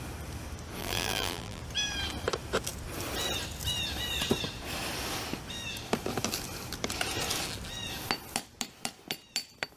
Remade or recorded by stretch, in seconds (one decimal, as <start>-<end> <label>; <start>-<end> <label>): 0.0-0.8 recorded; 0.8-1.6 remade; 1.6-9.8 recorded